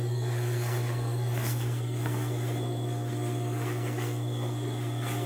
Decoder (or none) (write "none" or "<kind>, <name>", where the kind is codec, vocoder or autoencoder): codec, SNAC